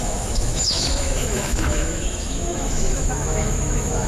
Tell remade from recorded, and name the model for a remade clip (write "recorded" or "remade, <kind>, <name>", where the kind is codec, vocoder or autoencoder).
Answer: remade, autoencoder, DAC-VAE